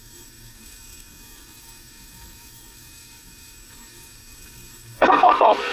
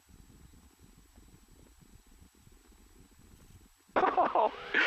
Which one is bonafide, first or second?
second